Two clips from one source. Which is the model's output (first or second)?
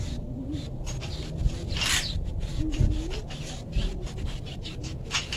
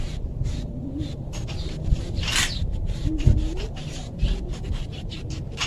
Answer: second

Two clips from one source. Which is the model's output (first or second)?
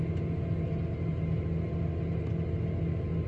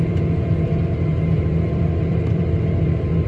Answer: second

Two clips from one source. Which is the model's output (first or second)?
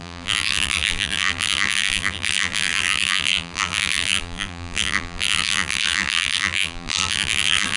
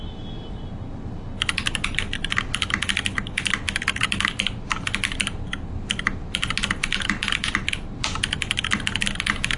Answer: first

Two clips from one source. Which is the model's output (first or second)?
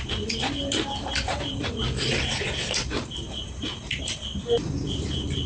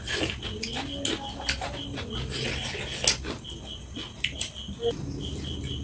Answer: first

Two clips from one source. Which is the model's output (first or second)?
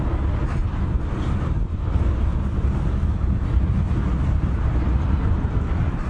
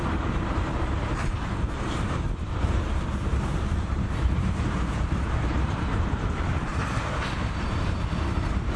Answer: second